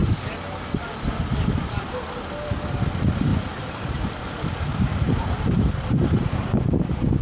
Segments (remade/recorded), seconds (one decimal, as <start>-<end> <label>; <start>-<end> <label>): 0.0-3.3 recorded; 3.3-7.2 remade